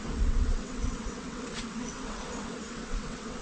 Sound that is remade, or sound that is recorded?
remade